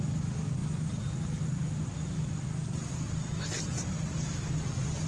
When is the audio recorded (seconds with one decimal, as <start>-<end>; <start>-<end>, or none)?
0.0-5.1

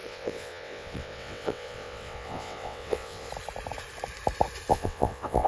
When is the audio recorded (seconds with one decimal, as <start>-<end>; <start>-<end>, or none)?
3.3-4.7

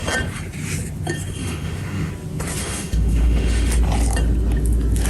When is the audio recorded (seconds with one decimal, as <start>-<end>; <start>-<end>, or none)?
0.0-1.4; 2.1-2.6; 3.7-5.1

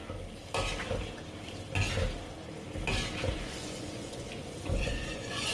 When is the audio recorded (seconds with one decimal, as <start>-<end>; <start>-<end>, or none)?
0.0-3.3

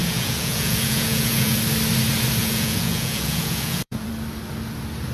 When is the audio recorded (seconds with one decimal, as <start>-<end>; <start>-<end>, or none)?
1.6-2.4; 4.1-5.1

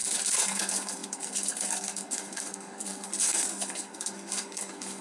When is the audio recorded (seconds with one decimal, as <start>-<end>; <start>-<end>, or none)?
none

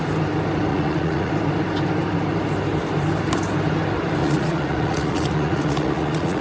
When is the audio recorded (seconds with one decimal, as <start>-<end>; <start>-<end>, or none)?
0.0-0.7; 1.3-4.2

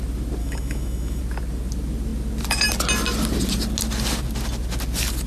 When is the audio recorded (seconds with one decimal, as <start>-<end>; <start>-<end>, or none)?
0.0-0.4; 1.2-5.3